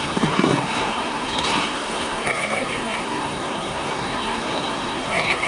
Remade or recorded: remade